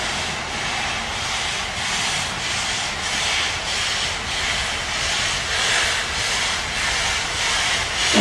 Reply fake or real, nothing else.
real